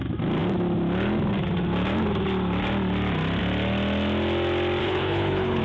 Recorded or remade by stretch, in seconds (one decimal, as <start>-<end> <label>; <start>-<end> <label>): 0.0-4.8 recorded; 4.8-5.6 remade